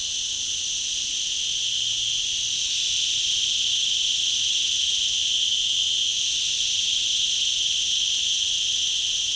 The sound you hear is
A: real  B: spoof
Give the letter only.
A